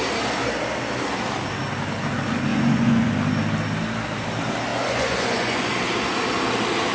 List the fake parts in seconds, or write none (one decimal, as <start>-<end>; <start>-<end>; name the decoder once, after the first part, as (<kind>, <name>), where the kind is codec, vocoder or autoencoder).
2.5-3.1 (vocoder, Vocos); 4.7-5.7